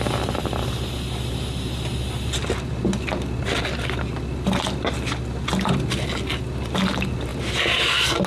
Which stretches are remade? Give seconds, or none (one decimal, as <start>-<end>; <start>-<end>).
none